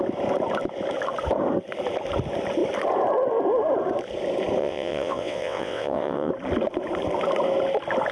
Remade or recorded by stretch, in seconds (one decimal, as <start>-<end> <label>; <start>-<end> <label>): 0.0-4.6 recorded; 4.6-6.3 remade; 6.3-8.1 recorded